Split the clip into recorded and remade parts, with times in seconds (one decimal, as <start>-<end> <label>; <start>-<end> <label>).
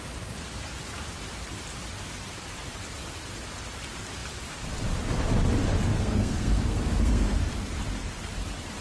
0.0-5.9 recorded; 5.9-7.4 remade; 7.4-8.8 recorded